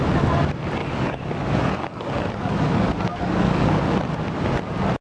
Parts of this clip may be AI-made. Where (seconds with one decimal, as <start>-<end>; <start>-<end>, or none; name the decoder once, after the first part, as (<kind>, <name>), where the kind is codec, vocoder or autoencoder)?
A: 0.8-3.8 (codec, DAC)